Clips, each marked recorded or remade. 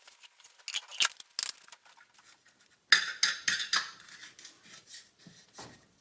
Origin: recorded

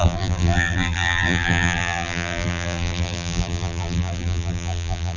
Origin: remade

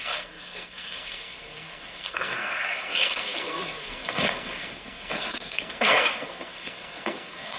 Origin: remade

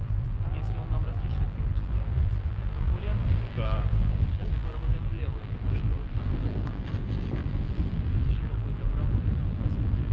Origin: remade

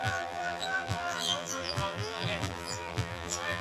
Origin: remade